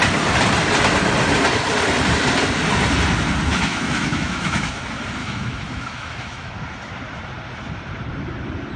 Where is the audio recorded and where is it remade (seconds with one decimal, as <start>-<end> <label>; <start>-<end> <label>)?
0.0-3.5 recorded; 3.5-4.7 remade; 4.7-5.2 recorded; 5.2-6.5 remade; 6.5-8.8 recorded